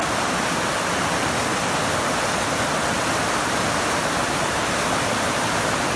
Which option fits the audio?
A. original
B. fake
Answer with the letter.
A